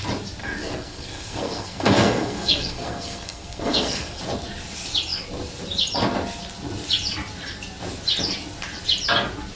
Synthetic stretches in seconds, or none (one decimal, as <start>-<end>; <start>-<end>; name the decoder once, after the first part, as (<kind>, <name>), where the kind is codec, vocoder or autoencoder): 0.4-4.2 (codec, SNAC)